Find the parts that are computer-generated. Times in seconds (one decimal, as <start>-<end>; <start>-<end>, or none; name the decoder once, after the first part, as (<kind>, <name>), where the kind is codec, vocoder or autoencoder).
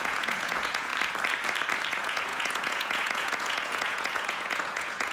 0.0-0.9 (vocoder, Vocos); 1.9-5.1